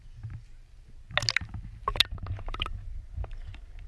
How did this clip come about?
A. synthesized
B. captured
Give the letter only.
B